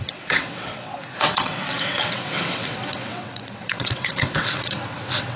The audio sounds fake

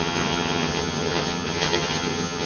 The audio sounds fake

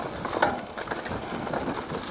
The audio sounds real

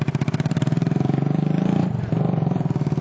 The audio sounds fake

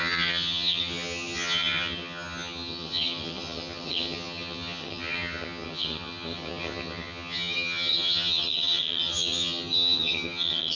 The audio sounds fake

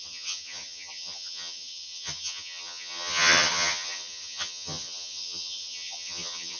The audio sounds fake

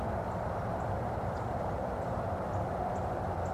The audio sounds fake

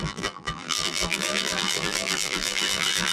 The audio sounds fake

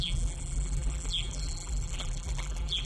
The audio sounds fake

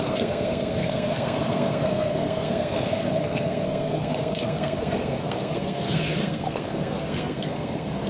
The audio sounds fake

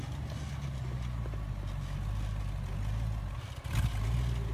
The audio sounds real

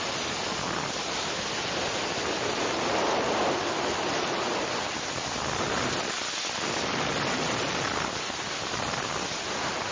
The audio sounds real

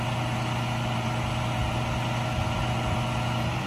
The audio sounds real